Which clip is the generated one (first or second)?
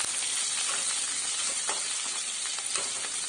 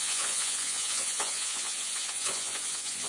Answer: second